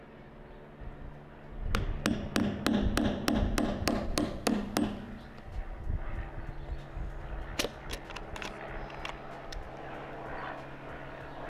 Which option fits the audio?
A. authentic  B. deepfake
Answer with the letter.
A